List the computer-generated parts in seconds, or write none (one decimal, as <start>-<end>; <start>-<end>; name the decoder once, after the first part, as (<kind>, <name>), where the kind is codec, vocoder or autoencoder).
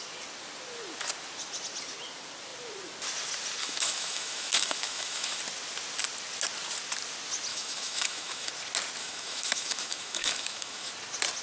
3.6-5.4 (autoencoder, DAC-VAE); 7.5-8.5; 9.0-10.9